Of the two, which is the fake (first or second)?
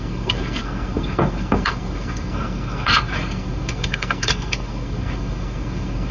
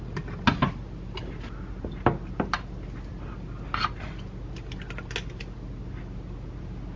first